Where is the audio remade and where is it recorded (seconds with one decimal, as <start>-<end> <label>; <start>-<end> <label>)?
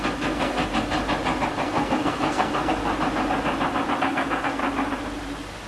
0.0-0.7 remade; 0.7-1.5 recorded; 1.5-2.8 remade; 2.8-4.0 recorded; 4.0-4.6 remade; 4.6-5.7 recorded